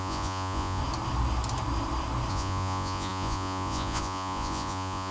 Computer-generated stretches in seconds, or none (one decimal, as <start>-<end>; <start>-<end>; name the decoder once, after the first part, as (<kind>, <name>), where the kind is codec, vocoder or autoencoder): 0.0-0.8 (vocoder, Vocos); 2.3-5.1